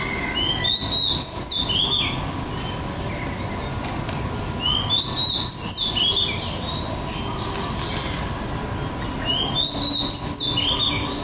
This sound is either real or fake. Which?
real